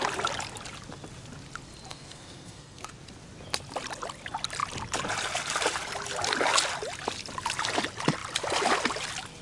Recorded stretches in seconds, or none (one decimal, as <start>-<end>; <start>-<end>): 0.0-1.9; 2.9-9.4